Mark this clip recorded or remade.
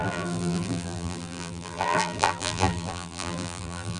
remade